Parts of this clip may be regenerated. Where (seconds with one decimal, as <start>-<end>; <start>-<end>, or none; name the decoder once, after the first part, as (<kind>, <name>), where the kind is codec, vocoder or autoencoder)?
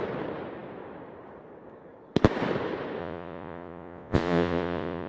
3.0-5.1 (vocoder, Vocos)